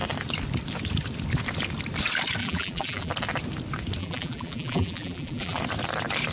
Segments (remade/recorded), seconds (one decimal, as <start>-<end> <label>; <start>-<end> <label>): 0.0-2.4 recorded; 2.4-3.1 remade; 3.1-4.0 recorded; 4.0-5.6 remade; 5.6-6.3 recorded